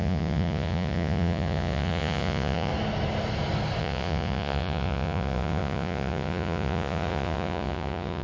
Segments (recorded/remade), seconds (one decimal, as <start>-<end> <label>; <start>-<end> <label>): 0.0-2.7 remade; 2.7-3.8 recorded; 3.8-8.2 remade